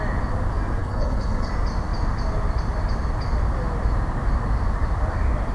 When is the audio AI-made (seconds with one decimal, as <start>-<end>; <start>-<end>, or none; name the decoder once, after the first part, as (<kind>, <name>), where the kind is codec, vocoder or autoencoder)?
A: 0.8-1.5 (codec, HILCodec)

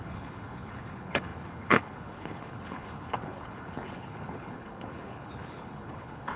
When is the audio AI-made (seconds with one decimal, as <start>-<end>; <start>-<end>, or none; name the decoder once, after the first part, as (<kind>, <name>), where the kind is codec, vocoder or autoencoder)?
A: 0.0-6.4 (codec, HILCodec)

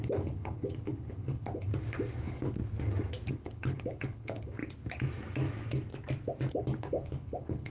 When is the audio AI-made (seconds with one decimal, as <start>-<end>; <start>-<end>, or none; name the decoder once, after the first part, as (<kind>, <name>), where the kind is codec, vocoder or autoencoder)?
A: 0.0-1.7 (codec, HILCodec); 2.2-2.6; 3.3-4.6; 6.5-7.7

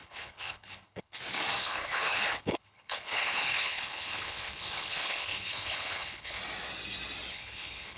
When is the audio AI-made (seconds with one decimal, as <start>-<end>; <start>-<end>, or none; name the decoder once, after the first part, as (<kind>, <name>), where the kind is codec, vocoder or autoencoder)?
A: 0.0-1.2 (codec, HILCodec); 1.6-6.4; 7.3-8.0